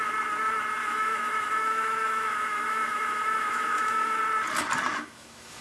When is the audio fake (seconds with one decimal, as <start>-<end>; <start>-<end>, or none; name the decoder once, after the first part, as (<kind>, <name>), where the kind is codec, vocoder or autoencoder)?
0.8-4.2 (autoencoder, DAC-VAE); 4.9-5.6

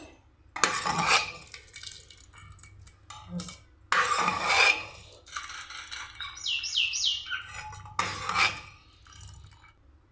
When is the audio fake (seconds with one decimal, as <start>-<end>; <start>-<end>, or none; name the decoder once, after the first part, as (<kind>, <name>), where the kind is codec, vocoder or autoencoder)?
0.9-1.4 (vocoder, HiFi-GAN)

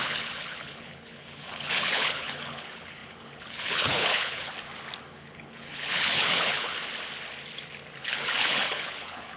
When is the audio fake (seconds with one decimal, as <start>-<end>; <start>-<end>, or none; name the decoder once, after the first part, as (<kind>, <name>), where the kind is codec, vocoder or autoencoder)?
0.0-4.5 (codec, HILCodec); 5.0-6.8; 8.0-9.4

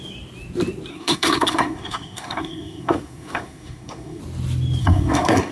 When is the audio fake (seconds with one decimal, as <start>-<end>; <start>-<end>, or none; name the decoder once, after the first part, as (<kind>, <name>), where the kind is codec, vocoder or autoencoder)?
0.9-4.2 (codec, SNAC); 4.8-5.5

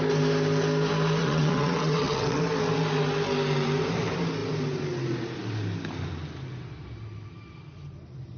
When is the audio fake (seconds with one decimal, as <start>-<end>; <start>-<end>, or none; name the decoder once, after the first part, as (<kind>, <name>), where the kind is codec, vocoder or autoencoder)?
1.2-2.4 (vocoder, WaveNeXt)

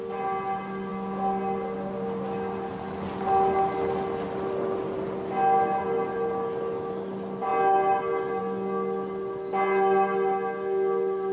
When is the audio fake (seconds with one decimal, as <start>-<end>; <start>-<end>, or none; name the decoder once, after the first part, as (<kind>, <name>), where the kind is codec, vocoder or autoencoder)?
none